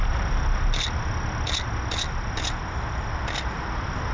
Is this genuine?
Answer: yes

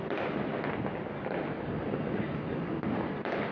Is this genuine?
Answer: yes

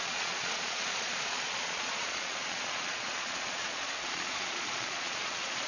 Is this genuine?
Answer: no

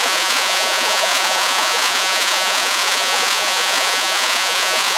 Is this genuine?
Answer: no